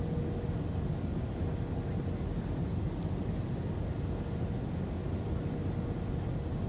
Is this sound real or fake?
real